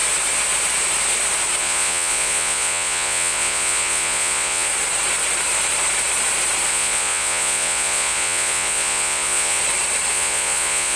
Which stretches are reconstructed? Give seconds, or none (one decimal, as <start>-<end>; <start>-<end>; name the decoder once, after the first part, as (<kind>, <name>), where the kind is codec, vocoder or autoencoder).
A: 1.6-4.7 (vocoder, Vocos); 6.7-9.6; 10.1-11.0